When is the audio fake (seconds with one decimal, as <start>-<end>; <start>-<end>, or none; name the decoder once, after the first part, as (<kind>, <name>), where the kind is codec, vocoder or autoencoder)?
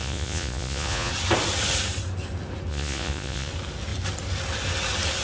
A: 0.0-1.1 (vocoder, Vocos); 2.7-3.5